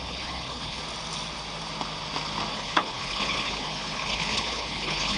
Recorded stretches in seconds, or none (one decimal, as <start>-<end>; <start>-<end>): 0.8-2.5